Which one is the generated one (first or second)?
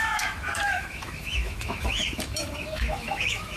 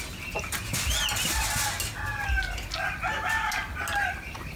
first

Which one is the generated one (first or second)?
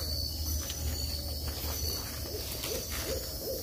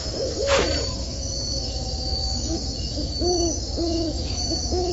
second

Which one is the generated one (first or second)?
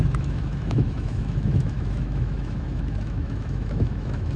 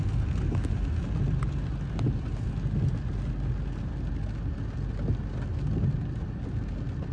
first